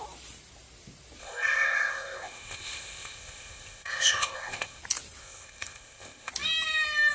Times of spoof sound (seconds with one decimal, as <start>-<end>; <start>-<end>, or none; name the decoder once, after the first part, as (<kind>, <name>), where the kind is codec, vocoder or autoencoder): 1.2-4.8 (codec, ZipCodec); 5.2-6.3